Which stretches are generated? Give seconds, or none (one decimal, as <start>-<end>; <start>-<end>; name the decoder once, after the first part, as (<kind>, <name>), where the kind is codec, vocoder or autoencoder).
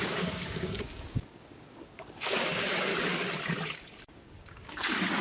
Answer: 0.0-2.9 (codec, DAC); 4.1-5.2